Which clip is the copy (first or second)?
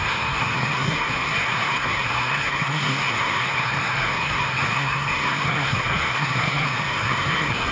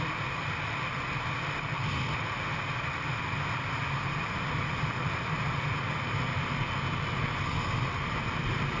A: first